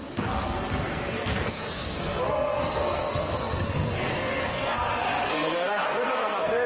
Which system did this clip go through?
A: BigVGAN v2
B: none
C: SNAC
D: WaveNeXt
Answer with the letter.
C